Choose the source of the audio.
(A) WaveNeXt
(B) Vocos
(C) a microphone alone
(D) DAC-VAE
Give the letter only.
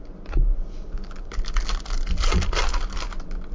C